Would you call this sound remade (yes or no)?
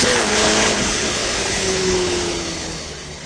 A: yes